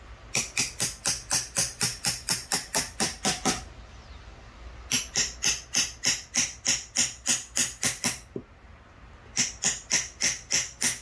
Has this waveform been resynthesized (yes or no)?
no